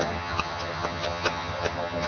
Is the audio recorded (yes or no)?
no